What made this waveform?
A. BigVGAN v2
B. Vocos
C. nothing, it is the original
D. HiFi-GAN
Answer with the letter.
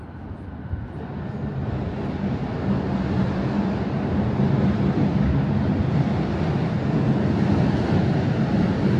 C